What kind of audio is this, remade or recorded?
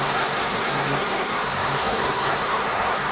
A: remade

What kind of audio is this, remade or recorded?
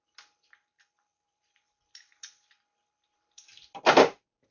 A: remade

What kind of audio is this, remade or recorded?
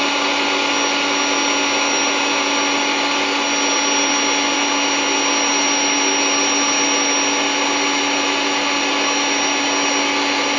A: recorded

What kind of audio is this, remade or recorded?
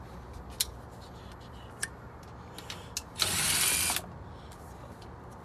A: recorded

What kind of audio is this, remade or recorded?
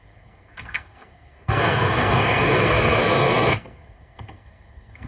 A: remade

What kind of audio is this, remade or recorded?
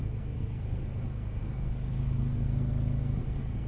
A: remade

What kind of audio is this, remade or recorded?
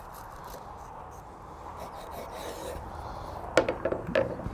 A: recorded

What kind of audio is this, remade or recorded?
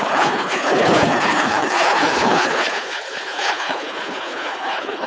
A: remade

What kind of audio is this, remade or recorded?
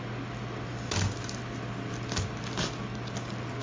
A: recorded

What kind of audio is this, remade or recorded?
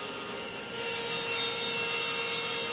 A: recorded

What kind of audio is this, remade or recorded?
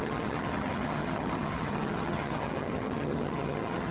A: remade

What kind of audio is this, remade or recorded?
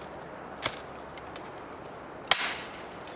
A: recorded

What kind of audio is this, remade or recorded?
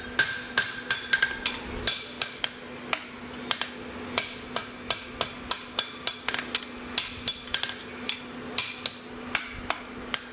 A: recorded